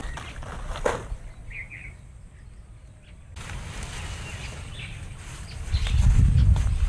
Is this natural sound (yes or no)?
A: yes